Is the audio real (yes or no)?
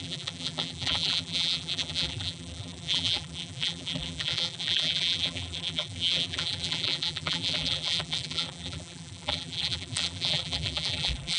no